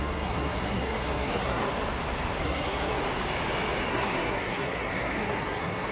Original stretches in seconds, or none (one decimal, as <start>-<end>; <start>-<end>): 1.6-2.4; 3.0-3.9